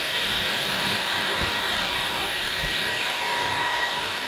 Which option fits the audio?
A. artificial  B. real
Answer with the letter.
A